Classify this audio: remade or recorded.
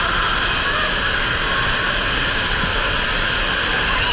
recorded